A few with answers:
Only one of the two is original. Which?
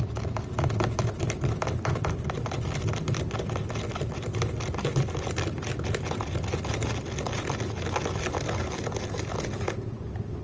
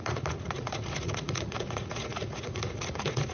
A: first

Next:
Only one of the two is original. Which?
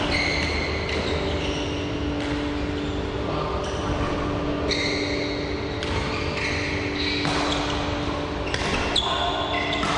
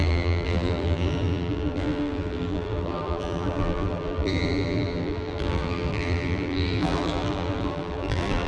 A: first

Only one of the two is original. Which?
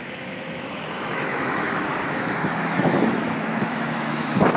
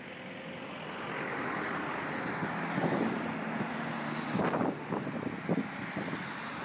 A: second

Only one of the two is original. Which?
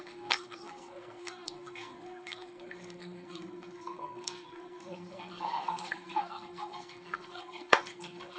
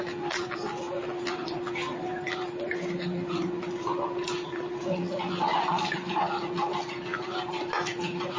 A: second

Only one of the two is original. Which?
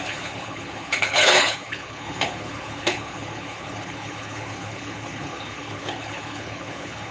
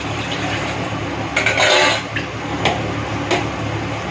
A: second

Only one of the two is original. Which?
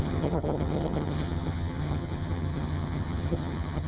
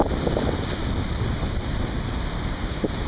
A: second